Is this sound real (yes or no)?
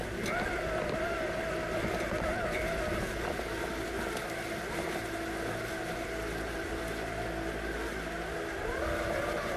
yes